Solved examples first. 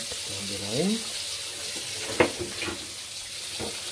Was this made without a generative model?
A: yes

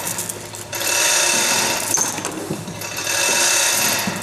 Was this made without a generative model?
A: yes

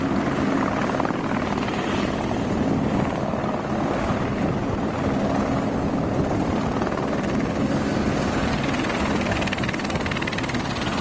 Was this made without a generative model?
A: yes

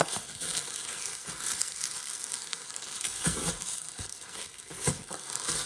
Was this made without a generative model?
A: no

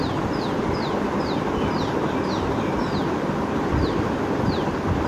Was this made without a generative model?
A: yes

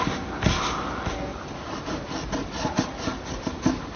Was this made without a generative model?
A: yes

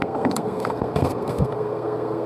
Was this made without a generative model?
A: no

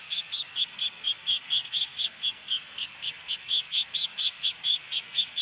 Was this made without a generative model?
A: no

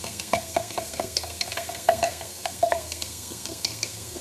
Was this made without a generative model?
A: no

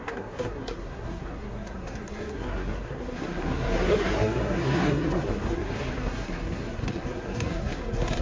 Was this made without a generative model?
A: no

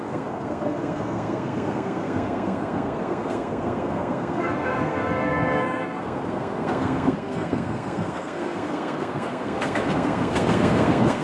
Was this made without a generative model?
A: no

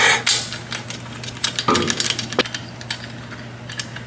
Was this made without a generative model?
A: yes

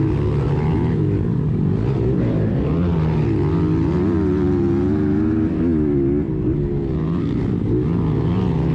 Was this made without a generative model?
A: yes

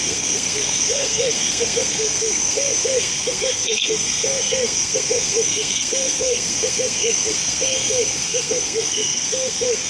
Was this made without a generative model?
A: no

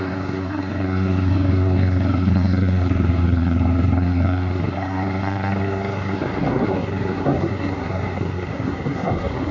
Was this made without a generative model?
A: no